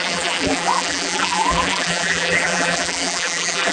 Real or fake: fake